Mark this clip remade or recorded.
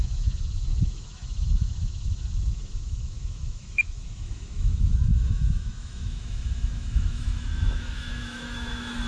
remade